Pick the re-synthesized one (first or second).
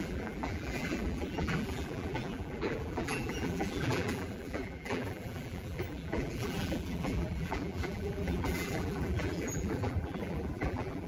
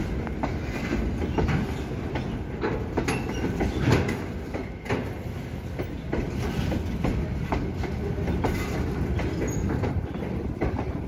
first